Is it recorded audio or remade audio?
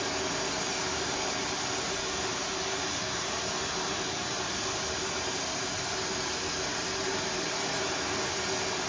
recorded